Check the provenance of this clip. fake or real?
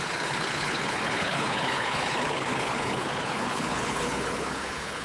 fake